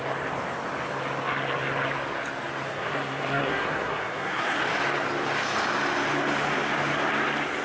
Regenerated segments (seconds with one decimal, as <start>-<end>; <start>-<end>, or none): 2.7-4.6